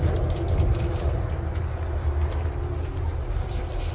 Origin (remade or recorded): recorded